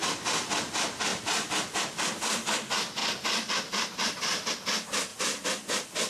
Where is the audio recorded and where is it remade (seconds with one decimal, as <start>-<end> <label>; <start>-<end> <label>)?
0.0-6.1 recorded